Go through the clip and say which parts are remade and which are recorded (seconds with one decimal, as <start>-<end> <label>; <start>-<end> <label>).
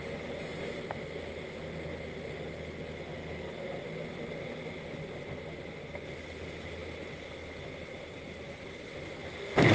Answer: 0.0-9.7 recorded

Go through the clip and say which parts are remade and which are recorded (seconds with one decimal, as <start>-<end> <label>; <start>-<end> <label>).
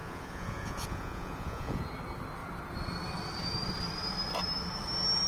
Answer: 0.0-1.8 remade; 1.8-5.3 recorded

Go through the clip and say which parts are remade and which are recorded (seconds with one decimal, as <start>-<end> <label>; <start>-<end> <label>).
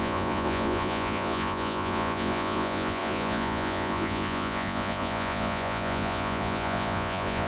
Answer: 0.0-7.5 remade